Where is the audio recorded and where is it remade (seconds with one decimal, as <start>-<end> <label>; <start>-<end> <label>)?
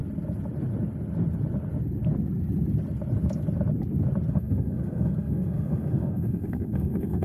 0.0-4.3 recorded; 4.3-7.2 remade